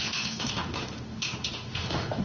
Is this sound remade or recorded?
remade